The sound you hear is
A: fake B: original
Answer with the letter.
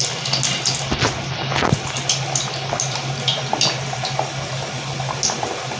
B